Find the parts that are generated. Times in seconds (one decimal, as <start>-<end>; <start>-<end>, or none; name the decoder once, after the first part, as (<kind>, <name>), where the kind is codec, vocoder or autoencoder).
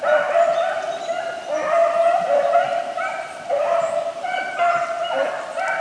none